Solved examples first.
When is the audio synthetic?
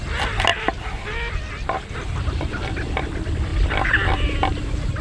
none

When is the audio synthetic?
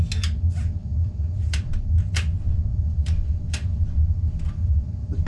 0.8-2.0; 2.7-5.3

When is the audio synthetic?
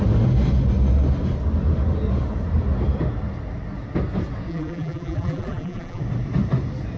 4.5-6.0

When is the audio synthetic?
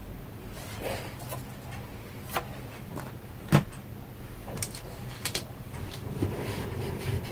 0.0-0.7; 2.9-3.5; 4.4-6.1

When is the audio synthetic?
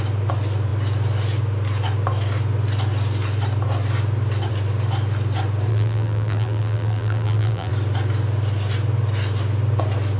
5.7-7.7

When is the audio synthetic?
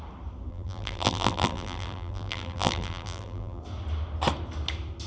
0.5-3.6